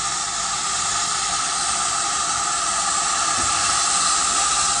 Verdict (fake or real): fake